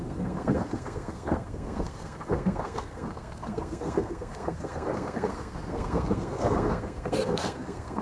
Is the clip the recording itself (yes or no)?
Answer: no